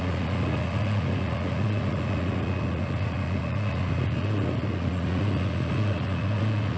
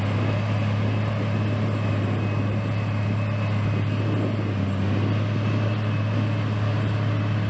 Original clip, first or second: second